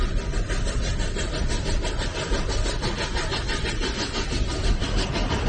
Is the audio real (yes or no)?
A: yes